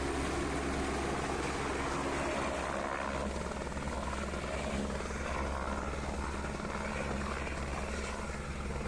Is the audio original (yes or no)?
yes